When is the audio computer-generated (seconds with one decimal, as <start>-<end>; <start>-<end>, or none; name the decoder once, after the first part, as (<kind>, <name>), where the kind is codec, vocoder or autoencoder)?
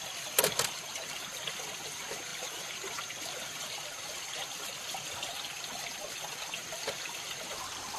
none